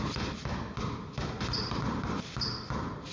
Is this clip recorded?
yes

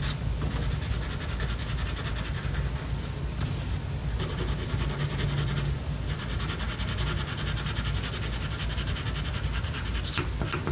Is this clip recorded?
yes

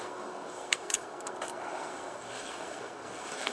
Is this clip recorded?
no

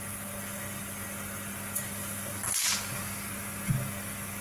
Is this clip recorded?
yes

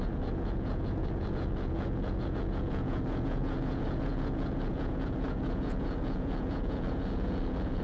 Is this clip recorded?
no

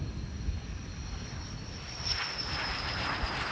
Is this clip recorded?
yes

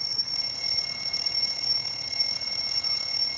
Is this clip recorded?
no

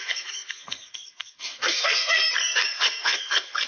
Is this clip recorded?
no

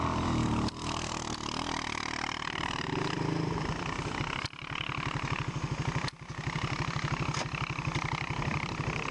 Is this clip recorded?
no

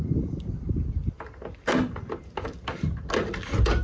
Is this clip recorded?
yes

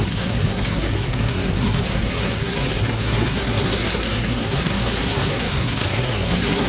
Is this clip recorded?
no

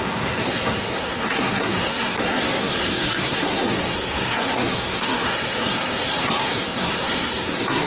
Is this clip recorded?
no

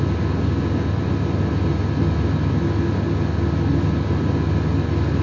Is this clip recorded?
yes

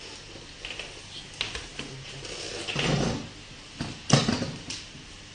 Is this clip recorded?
yes